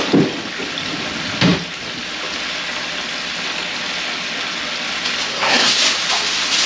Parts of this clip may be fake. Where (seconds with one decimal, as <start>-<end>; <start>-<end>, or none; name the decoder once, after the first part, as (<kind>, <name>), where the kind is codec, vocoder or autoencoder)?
5.3-5.8 (codec, SNAC)